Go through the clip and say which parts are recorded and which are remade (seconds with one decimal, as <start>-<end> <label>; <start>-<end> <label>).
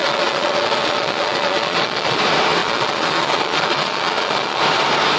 0.0-2.2 remade; 2.2-2.6 recorded; 2.6-4.6 remade; 4.6-5.2 recorded